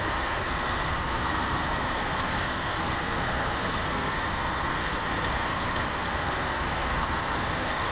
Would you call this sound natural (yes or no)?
no